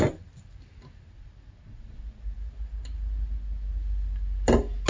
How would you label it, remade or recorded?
recorded